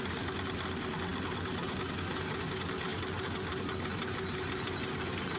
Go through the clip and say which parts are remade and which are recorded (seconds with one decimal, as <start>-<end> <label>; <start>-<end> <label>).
0.0-5.4 recorded